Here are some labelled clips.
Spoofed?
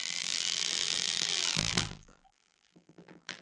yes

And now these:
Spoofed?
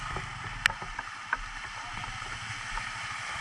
no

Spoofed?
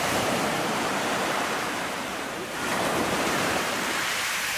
yes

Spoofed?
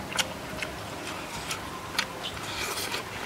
no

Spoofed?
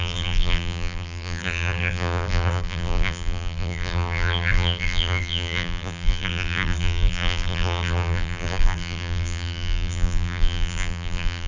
yes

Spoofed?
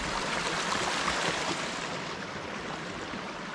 yes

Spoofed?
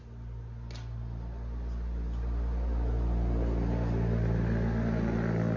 no